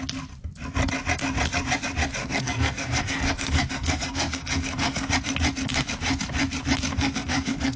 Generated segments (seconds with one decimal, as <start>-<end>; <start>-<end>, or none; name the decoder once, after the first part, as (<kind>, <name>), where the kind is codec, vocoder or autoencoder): 2.2-5.1 (codec, SNAC); 6.9-7.8